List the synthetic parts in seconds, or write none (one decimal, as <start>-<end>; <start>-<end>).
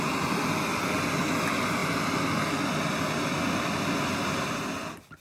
none